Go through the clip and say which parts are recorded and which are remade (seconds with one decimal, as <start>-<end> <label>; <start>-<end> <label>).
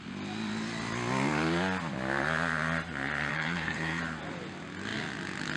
0.0-3.3 recorded; 3.3-4.0 remade; 4.0-5.6 recorded